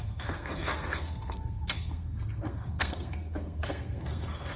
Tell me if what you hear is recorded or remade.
remade